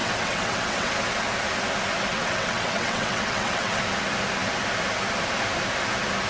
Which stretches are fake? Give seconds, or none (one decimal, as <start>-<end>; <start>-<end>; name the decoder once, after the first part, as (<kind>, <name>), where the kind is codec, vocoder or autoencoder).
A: 0.0-0.9 (vocoder, WaveNeXt); 2.1-3.8